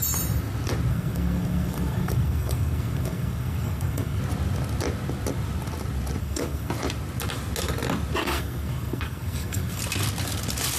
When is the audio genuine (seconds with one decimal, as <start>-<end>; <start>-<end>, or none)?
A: 0.0-0.9; 4.2-6.2; 6.7-8.2; 9.8-10.8